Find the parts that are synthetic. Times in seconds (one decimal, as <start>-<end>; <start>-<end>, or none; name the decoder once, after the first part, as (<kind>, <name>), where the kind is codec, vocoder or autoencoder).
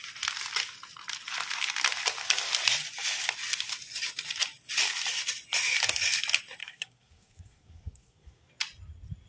6.6-8.5 (codec, SNAC)